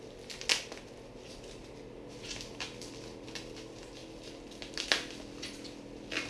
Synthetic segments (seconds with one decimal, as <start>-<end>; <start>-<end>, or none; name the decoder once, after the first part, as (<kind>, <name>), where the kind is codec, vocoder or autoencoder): none